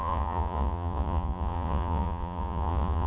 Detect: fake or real fake